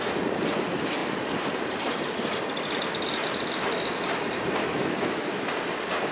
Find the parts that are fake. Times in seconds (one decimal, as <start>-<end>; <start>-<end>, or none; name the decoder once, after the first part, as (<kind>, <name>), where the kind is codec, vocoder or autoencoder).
4.6-5.5 (autoencoder, DAC-VAE)